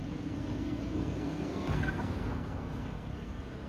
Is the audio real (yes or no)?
no